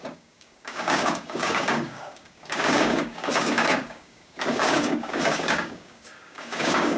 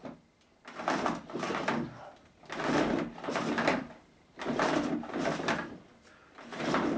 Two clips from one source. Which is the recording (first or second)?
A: second